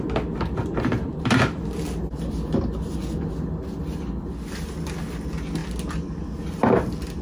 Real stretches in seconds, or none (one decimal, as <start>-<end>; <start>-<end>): 0.0-7.2